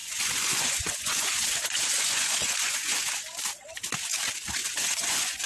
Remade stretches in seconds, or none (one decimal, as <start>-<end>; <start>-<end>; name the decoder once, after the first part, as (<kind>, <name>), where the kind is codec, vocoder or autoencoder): 0.0-3.1 (vocoder, Vocos); 4.6-5.5